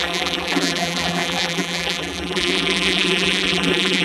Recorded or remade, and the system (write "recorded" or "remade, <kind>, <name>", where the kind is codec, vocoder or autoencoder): remade, vocoder, BigVGAN v2